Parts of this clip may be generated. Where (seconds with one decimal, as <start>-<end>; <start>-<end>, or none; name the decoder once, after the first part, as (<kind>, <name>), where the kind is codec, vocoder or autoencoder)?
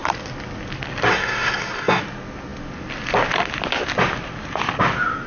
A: 1.1-2.0 (codec, SNAC)